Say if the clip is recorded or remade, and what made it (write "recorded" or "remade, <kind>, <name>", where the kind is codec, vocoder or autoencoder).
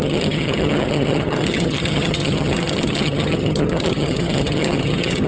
remade, vocoder, HiFi-GAN